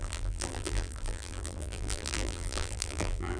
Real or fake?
fake